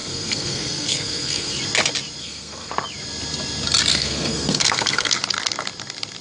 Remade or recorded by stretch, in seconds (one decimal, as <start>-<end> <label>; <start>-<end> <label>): 0.0-1.6 remade; 1.6-2.2 recorded; 2.2-2.7 remade; 2.7-3.9 recorded; 3.9-5.1 remade; 5.1-6.2 recorded